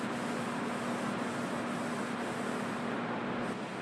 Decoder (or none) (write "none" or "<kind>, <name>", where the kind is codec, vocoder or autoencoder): none